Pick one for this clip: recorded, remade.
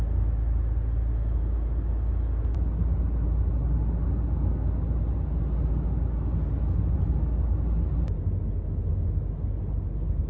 recorded